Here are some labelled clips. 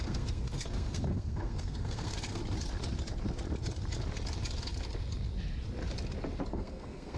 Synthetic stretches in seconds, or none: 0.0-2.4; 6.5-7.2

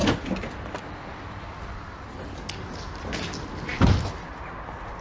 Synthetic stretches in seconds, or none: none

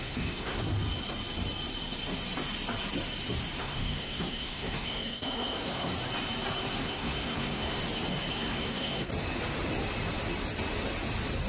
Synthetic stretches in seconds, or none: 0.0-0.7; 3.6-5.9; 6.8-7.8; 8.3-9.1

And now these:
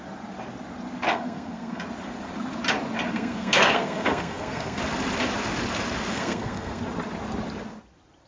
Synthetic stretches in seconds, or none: 1.1-1.8; 3.1-4.8; 6.1-6.8

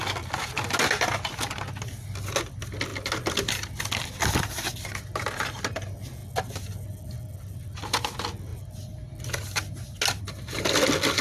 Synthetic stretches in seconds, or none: none

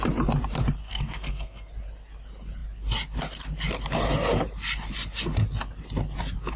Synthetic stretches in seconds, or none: 0.8-1.7

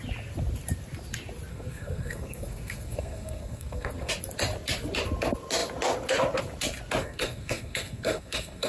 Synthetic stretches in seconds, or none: 1.5-4.1; 7.0-8.7